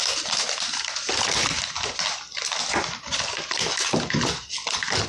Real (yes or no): yes